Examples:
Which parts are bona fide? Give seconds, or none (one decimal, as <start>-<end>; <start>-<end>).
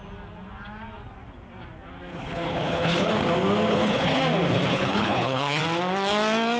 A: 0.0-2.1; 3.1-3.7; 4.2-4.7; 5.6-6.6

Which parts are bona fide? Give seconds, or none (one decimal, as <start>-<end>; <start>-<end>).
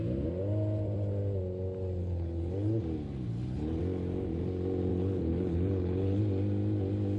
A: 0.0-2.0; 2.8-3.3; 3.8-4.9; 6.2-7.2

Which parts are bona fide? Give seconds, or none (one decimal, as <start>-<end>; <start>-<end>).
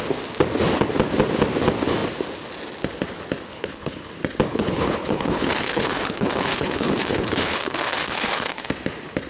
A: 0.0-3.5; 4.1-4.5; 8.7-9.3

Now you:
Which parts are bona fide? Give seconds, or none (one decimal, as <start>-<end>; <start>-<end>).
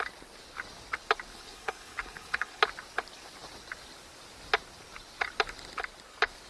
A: 0.0-1.3; 2.6-6.5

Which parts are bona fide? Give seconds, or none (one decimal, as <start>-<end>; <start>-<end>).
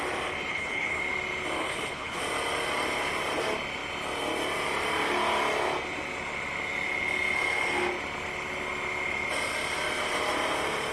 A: 0.0-0.5; 1.0-1.6; 2.2-10.9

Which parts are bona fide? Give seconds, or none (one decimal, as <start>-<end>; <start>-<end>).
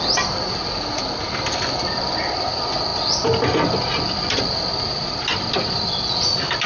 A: 0.0-6.7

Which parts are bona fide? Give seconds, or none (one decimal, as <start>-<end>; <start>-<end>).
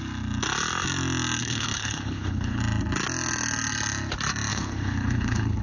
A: 0.0-1.4; 2.6-4.5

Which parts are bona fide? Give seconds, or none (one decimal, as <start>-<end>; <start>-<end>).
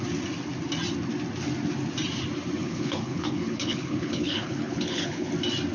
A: 0.0-2.6; 5.3-5.7